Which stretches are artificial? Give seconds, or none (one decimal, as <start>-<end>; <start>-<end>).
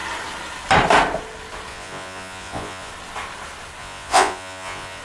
1.7-2.9; 3.8-5.0